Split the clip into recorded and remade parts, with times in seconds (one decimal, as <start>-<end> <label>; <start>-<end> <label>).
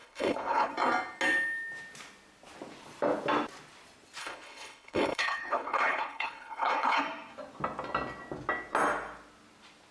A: 0.0-0.7 remade; 0.7-4.2 recorded; 4.2-7.0 remade; 7.0-9.9 recorded